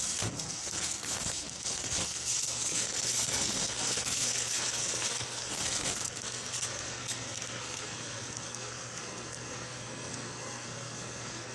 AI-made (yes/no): yes